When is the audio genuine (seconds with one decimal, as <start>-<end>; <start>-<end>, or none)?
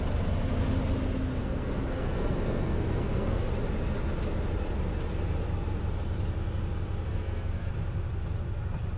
0.0-1.4; 3.5-7.1; 7.7-9.0